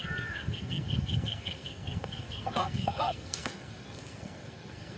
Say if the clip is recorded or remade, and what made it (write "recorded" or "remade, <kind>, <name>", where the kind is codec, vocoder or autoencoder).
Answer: remade, codec, SNAC